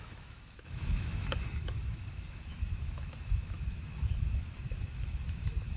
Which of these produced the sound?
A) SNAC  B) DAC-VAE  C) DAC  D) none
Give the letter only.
B